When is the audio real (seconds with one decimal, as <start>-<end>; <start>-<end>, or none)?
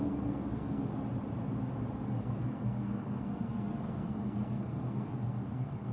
0.9-2.2